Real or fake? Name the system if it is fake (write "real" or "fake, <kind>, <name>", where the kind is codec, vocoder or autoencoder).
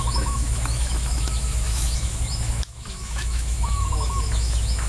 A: fake, autoencoder, DAC-VAE